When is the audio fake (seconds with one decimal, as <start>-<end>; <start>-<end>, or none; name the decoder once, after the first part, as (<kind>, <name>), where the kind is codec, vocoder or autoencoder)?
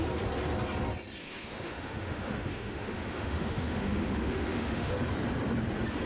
1.2-4.9 (autoencoder, DAC-VAE)